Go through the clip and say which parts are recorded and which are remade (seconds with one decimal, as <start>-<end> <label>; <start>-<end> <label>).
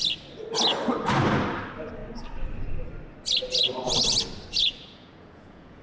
0.0-4.6 recorded; 4.6-5.8 remade